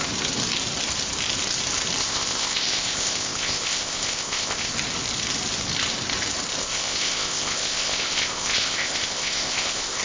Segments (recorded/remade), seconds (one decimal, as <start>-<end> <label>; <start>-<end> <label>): 0.0-2.0 recorded; 2.0-4.7 remade; 4.7-6.6 recorded; 6.6-10.0 remade